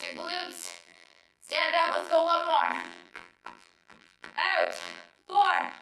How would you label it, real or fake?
fake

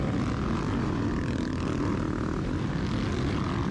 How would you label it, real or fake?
real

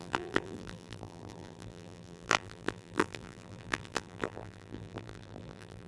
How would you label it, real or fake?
fake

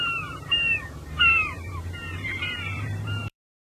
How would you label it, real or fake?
fake